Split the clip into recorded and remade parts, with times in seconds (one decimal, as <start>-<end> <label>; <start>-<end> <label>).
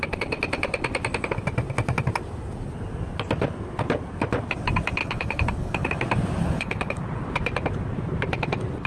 0.0-5.0 recorded; 5.0-5.9 remade; 5.9-6.4 recorded; 6.4-7.0 remade; 7.0-8.9 recorded